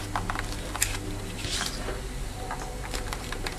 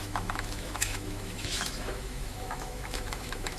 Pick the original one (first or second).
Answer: first